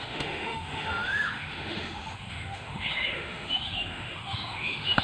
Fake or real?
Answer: fake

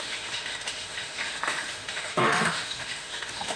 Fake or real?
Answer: fake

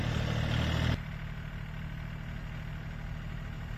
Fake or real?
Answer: real